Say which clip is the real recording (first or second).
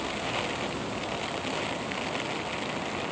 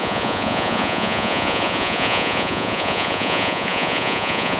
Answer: first